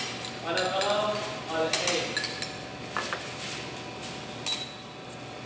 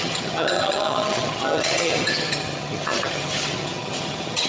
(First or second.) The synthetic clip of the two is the second